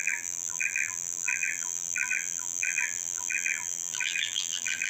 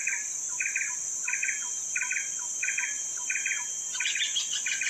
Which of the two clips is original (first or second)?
second